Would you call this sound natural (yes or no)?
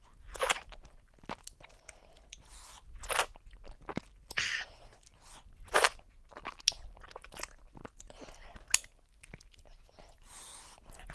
yes